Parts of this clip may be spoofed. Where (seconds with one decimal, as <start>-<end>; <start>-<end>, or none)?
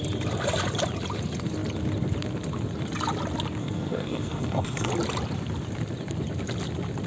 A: 3.6-4.9